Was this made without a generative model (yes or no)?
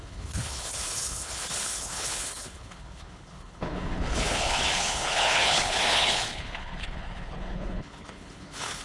no